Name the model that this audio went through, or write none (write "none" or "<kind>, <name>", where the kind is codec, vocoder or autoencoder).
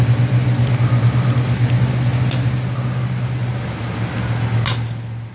none